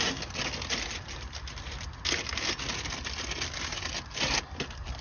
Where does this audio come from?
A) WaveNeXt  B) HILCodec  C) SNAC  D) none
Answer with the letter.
D